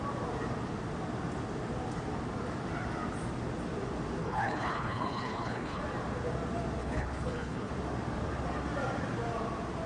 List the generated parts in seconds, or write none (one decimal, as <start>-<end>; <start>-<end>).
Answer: 4.2-5.8; 6.8-7.7